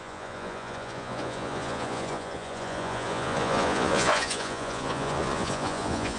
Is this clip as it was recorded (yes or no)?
no